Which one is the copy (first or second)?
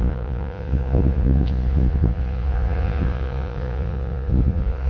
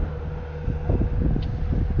first